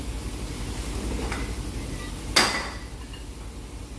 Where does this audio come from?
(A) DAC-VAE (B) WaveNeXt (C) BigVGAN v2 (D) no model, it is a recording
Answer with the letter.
D